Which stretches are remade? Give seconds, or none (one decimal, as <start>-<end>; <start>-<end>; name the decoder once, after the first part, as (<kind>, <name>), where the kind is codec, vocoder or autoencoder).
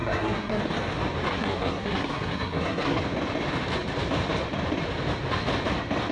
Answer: 0.0-0.6 (codec, SNAC); 1.3-3.0